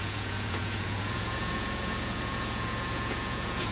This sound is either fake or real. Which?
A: fake